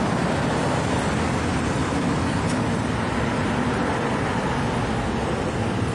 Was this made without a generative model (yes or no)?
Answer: yes